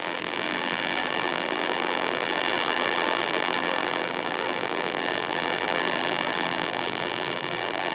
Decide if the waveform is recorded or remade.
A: remade